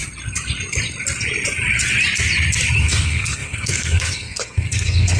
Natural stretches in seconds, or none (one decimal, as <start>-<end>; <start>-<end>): 0.0-2.8